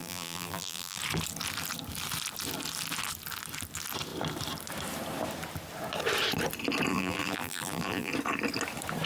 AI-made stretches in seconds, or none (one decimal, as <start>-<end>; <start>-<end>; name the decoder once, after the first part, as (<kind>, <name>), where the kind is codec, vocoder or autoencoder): 0.0-1.0 (vocoder, BigVGAN v2); 6.9-8.1